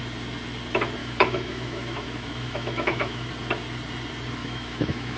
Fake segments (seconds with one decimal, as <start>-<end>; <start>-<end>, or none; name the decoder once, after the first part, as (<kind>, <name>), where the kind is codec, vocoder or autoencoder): 1.0-3.3 (autoencoder, DAC-VAE); 4.4-5.2